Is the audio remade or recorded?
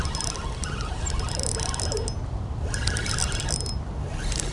recorded